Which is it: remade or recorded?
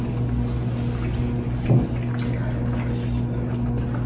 recorded